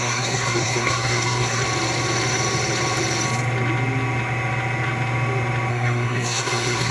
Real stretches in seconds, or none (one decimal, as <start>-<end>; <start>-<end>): 1.6-5.7